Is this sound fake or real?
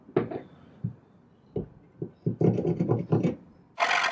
real